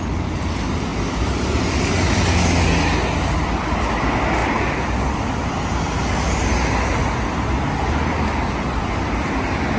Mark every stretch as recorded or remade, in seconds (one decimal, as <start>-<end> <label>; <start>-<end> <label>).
0.0-9.8 recorded

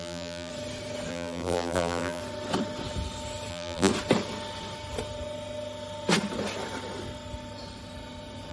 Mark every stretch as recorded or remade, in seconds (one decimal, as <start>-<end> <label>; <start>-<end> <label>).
0.0-0.5 remade; 0.5-1.1 recorded; 1.1-2.2 remade; 2.2-3.5 recorded; 3.5-3.9 remade; 3.9-8.5 recorded

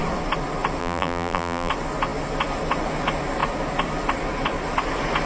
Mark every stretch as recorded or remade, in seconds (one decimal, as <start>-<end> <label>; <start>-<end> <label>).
0.0-0.8 recorded; 0.8-1.7 remade; 1.7-5.3 recorded

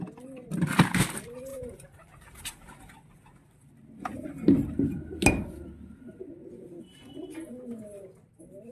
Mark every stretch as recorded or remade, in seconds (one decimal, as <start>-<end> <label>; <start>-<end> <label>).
0.0-1.5 recorded; 1.5-2.4 remade; 2.4-4.1 recorded; 4.1-4.7 remade; 4.7-8.7 recorded

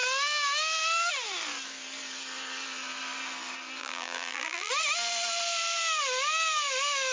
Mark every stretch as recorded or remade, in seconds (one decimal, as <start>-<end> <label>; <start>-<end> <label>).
0.0-3.8 recorded; 3.8-4.7 remade; 4.7-7.1 recorded

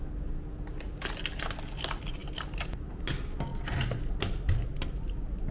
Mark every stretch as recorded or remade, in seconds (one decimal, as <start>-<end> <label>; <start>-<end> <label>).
0.0-5.5 recorded

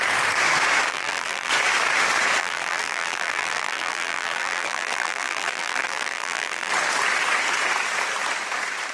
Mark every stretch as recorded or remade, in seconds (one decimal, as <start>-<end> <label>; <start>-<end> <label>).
0.0-0.9 recorded; 0.9-1.5 remade; 1.5-2.4 recorded; 2.4-6.7 remade; 6.7-8.9 recorded